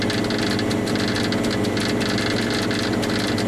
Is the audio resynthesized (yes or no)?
no